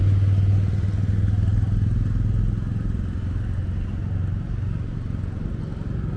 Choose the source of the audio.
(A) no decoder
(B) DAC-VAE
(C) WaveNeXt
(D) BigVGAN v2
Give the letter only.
A